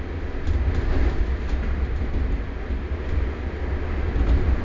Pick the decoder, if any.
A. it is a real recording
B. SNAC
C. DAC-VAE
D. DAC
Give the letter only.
A